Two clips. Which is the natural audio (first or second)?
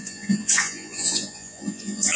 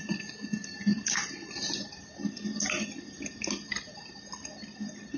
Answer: second